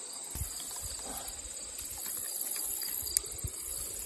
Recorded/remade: recorded